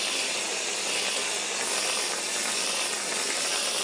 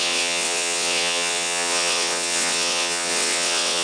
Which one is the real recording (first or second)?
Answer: first